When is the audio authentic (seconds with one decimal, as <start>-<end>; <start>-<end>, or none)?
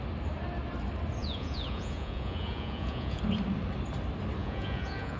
0.0-1.2; 3.2-4.4